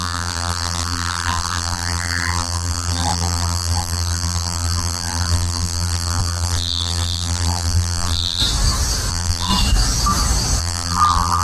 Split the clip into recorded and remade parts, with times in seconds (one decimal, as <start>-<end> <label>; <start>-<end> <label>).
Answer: 0.0-8.4 remade; 8.4-9.1 recorded; 9.1-9.5 remade; 9.5-10.6 recorded; 10.6-11.4 remade